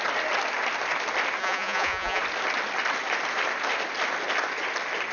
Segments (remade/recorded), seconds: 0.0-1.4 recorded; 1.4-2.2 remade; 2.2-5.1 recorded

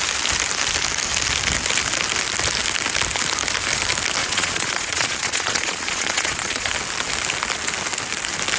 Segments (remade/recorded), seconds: 0.0-4.2 recorded; 4.2-6.7 remade; 6.7-8.6 recorded

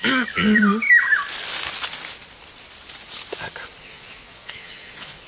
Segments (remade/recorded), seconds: 0.0-0.6 remade; 0.6-3.8 recorded; 3.8-5.3 remade